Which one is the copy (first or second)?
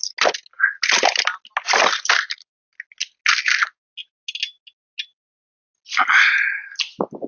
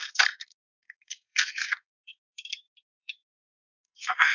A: second